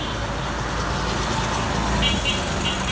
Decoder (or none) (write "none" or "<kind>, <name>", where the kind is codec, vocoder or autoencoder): none